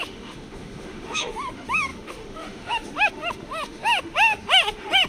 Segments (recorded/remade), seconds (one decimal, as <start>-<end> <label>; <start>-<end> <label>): 0.0-5.1 remade